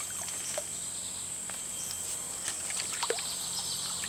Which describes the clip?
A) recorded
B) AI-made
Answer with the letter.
A